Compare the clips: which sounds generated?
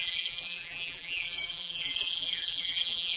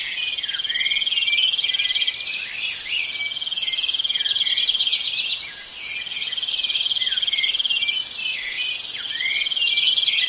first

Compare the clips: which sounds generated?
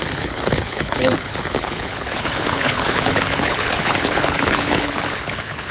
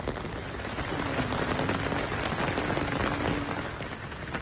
first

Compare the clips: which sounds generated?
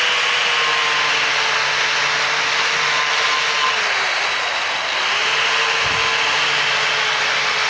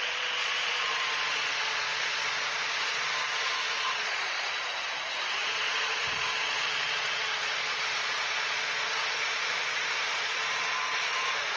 second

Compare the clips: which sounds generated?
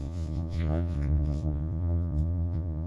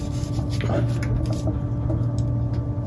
first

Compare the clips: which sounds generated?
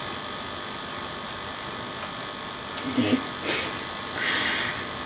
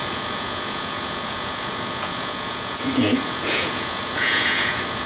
second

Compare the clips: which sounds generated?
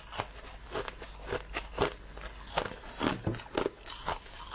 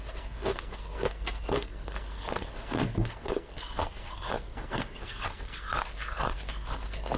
second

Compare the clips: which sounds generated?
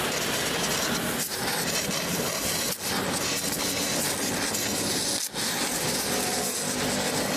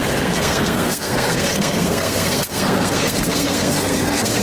second